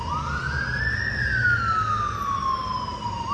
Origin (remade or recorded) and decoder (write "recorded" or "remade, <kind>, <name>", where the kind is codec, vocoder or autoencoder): recorded